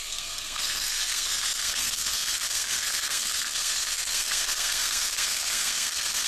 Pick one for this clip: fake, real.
fake